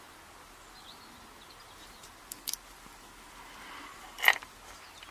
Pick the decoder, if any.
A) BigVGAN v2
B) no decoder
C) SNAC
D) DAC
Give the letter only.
B